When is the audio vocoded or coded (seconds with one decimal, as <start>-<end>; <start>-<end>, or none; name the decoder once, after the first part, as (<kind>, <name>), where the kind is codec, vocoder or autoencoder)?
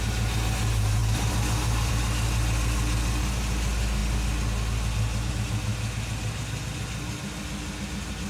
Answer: 1.0-1.9 (vocoder, BigVGAN v2); 5.7-6.8